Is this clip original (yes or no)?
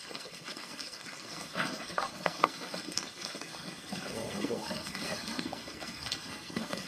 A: no